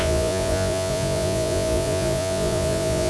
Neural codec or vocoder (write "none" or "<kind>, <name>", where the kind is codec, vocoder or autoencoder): vocoder, Vocos